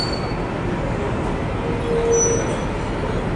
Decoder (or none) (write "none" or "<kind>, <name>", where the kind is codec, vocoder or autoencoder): none